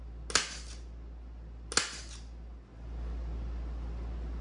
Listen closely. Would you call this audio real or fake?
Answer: real